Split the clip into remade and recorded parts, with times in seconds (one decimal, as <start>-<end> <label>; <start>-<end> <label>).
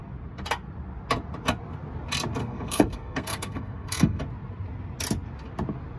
0.0-2.4 recorded; 2.4-4.2 remade; 4.2-6.0 recorded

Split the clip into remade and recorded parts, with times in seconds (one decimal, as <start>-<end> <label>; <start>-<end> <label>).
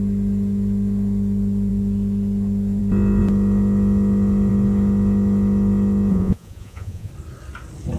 0.0-6.1 recorded; 6.1-7.1 remade; 7.1-8.0 recorded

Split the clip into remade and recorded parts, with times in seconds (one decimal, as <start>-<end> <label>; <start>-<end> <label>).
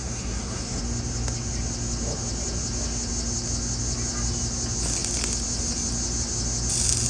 0.0-0.8 remade; 0.8-7.1 recorded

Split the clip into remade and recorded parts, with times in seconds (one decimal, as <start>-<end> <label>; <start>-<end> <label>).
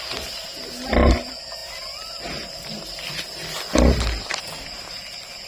0.0-5.5 recorded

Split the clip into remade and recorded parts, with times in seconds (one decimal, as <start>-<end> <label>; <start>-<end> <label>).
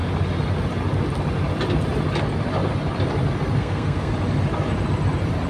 0.0-3.6 recorded; 3.6-4.1 remade; 4.1-5.5 recorded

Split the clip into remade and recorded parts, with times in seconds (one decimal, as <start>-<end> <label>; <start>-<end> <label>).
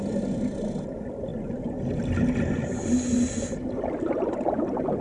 0.0-5.0 recorded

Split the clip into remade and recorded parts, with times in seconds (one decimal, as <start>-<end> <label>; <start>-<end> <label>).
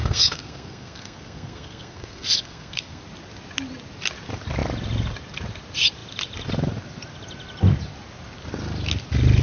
0.0-3.0 remade; 3.0-9.4 recorded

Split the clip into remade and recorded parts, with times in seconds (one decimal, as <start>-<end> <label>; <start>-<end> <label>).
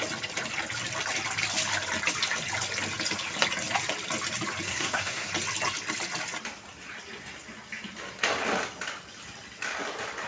0.0-4.7 recorded; 4.7-5.3 remade; 5.3-10.3 recorded